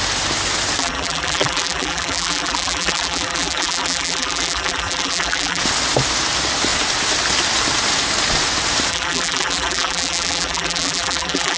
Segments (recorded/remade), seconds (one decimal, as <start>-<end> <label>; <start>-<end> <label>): 0.0-0.8 recorded; 0.8-5.6 remade; 5.6-8.9 recorded; 8.9-11.6 remade